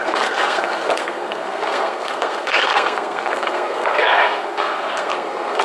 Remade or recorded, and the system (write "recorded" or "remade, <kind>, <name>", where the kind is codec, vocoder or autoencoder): remade, codec, SNAC